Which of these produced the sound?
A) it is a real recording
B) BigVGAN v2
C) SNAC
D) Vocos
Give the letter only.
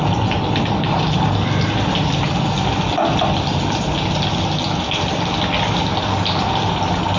A